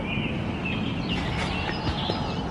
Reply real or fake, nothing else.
real